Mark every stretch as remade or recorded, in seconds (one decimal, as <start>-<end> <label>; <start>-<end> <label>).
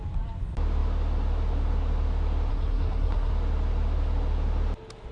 0.0-2.5 recorded; 2.5-3.3 remade; 3.3-5.1 recorded